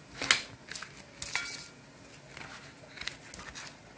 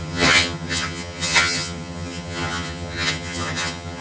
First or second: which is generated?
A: second